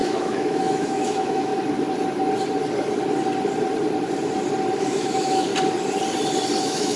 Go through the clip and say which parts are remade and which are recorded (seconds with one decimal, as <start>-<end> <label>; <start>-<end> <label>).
0.0-1.5 remade; 1.5-4.8 recorded; 4.8-5.5 remade; 5.5-6.6 recorded; 6.6-7.0 remade